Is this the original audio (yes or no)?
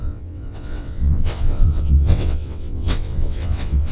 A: no